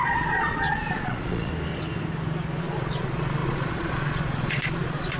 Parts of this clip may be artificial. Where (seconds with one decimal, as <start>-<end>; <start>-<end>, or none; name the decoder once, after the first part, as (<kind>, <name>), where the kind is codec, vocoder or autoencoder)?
0.0-1.5 (vocoder, Vocos); 2.6-5.2